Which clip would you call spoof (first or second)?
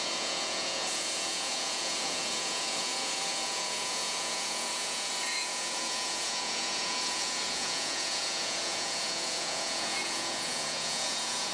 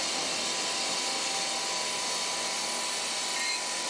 first